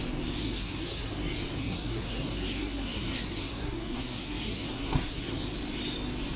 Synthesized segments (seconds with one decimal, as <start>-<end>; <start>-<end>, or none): 0.4-1.1; 1.6-5.4